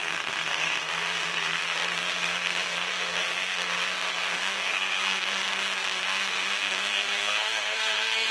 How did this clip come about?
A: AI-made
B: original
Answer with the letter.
A